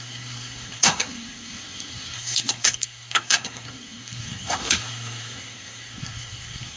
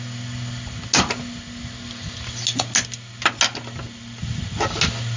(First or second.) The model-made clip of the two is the first